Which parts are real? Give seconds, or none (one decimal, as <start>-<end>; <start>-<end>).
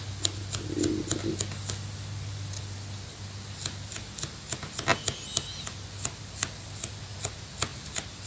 0.0-8.3